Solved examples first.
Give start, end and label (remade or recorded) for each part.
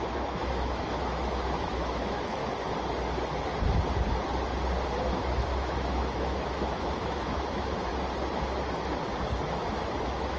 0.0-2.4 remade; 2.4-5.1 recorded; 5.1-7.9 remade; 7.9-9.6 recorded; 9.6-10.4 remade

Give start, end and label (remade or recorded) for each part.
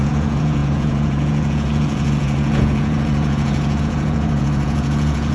0.0-5.3 remade